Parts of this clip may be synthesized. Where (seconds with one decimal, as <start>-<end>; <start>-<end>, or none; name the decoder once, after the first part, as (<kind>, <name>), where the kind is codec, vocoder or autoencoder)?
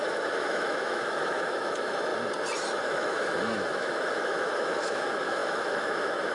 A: 0.0-2.1 (autoencoder, DAC-VAE); 2.8-6.3